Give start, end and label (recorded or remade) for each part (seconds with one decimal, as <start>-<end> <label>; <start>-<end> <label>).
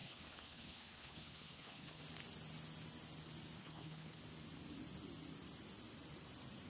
0.0-2.0 remade; 2.0-3.6 recorded; 3.6-4.2 remade; 4.2-6.7 recorded